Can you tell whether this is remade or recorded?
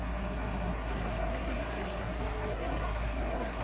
remade